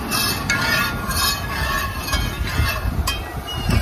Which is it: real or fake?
real